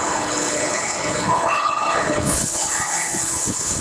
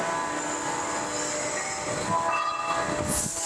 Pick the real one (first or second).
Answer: second